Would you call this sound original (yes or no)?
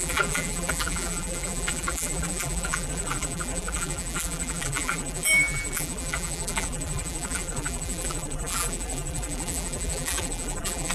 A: no